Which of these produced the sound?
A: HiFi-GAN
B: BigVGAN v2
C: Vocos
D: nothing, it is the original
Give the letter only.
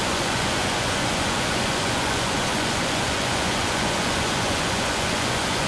C